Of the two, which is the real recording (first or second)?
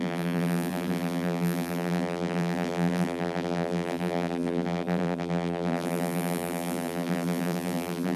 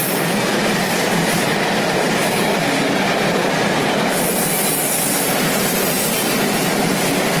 second